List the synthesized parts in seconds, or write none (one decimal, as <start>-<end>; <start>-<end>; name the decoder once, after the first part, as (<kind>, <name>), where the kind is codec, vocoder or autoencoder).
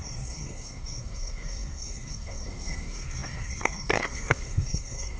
0.0-5.2 (codec, SNAC)